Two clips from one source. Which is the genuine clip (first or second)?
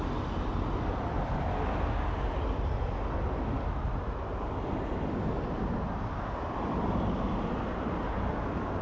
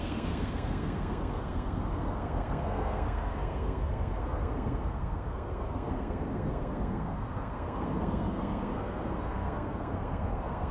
first